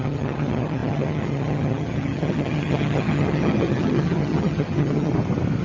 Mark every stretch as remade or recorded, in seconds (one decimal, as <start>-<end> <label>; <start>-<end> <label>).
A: 0.0-5.1 remade; 5.1-5.6 recorded